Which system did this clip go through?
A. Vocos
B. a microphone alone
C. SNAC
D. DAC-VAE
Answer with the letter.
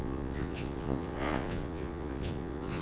A